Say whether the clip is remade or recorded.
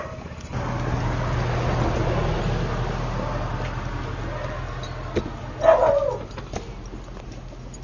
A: recorded